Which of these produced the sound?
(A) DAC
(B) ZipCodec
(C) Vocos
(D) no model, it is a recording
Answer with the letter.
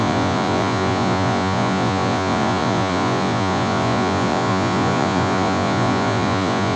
C